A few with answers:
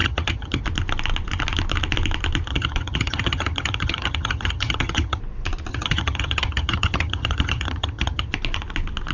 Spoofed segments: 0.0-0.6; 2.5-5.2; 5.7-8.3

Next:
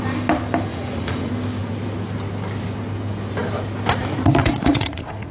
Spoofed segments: 0.7-1.3; 4.4-5.3

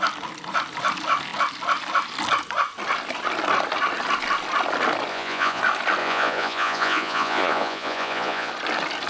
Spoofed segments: 5.1-5.6; 6.0-8.5

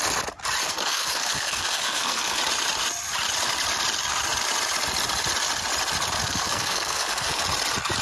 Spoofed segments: 0.6-2.4; 6.2-7.4

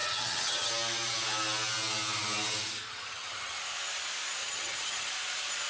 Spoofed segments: 0.0-0.7; 2.9-3.6; 4.4-5.1